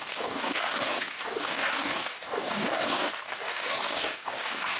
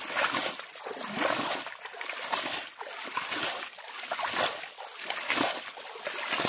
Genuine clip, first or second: second